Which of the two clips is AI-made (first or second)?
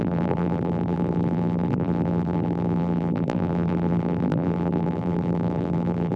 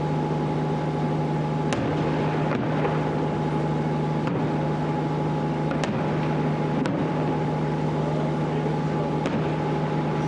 first